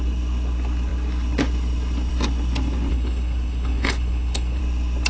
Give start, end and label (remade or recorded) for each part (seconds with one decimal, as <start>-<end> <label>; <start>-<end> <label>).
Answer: 0.0-2.9 recorded; 2.9-4.6 remade; 4.6-5.1 recorded